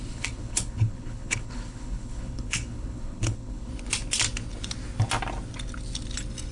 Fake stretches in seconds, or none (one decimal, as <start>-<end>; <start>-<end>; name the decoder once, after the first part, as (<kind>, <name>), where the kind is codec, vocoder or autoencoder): 0.0-3.7 (codec, HILCodec)